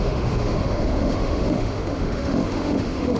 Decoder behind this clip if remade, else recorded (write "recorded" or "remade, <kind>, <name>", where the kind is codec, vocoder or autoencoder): remade, autoencoder, DAC-VAE